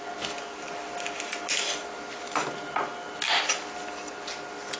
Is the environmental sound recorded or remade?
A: recorded